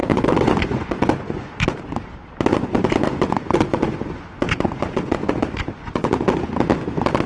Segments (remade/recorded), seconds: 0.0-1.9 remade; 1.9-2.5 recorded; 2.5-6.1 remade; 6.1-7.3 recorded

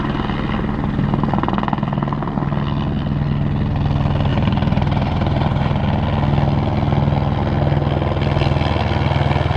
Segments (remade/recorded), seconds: 0.0-4.3 recorded; 4.3-5.8 remade; 5.8-9.6 recorded